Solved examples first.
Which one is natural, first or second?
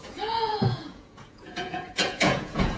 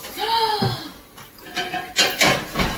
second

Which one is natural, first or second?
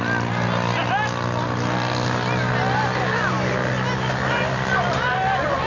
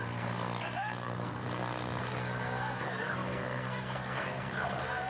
first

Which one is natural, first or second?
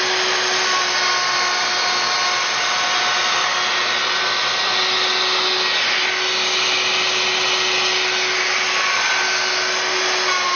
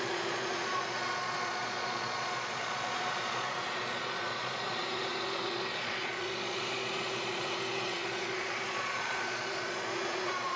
first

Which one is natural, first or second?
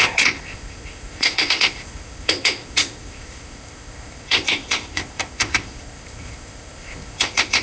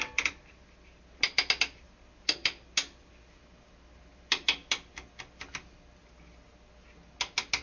second